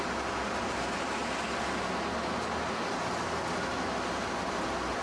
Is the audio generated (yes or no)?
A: no